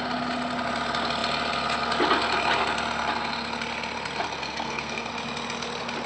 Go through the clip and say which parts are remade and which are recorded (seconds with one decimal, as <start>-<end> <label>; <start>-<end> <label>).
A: 0.0-4.4 recorded; 4.4-5.1 remade; 5.1-6.1 recorded